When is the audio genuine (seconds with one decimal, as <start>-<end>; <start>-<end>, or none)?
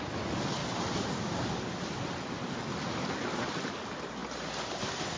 0.0-5.2